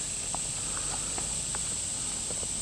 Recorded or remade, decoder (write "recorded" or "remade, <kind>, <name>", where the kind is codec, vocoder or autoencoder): recorded